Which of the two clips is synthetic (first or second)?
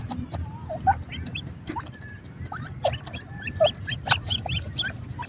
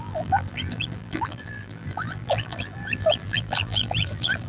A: second